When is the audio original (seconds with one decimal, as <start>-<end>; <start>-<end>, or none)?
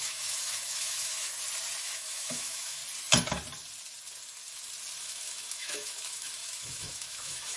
1.3-1.8; 2.8-5.0